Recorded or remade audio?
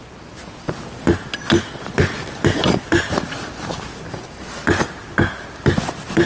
recorded